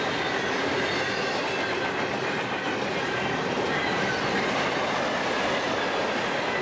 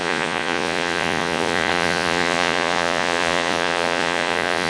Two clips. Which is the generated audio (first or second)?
second